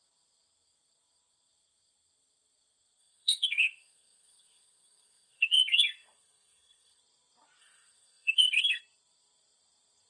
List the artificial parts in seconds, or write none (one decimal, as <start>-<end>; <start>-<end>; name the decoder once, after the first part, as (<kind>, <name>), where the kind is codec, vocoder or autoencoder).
3.0-7.0 (codec, SNAC); 7.6-8.8